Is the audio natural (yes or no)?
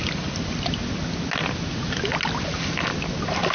yes